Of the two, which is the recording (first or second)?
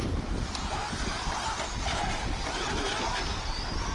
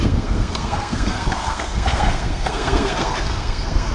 first